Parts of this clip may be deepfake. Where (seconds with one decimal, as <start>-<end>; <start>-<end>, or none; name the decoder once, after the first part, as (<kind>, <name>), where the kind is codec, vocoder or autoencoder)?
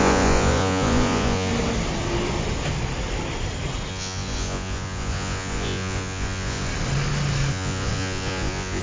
0.0-1.5 (vocoder, Vocos); 3.9-6.7; 7.5-8.8